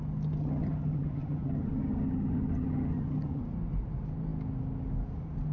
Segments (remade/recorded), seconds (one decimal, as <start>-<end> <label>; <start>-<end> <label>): 0.0-0.4 recorded; 0.4-3.4 remade; 3.4-5.5 recorded